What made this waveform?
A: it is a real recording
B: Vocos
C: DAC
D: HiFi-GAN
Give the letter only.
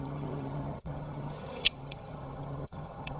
D